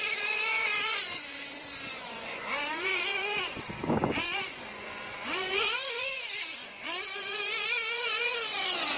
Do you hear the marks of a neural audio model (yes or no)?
yes